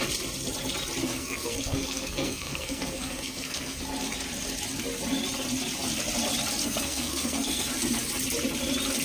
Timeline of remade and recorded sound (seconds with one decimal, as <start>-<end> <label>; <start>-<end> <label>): 0.0-1.0 recorded; 1.0-3.8 remade; 3.8-6.6 recorded; 6.6-7.7 remade; 7.7-9.0 recorded